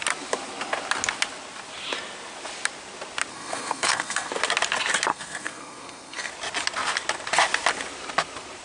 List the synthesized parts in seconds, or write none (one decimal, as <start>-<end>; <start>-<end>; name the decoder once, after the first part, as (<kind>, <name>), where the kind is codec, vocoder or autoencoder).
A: 3.3-4.3 (codec, SNAC); 5.1-6.3